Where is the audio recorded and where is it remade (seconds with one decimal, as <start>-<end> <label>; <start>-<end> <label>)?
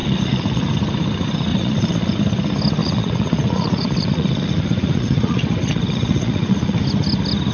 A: 0.0-0.7 remade; 0.7-1.5 recorded; 1.5-2.1 remade; 2.1-2.8 recorded; 2.8-6.8 remade; 6.8-7.5 recorded